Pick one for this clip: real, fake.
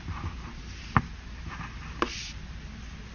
real